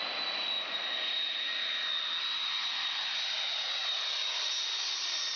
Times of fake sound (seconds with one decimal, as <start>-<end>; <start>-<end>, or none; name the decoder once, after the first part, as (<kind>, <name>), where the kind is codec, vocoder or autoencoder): none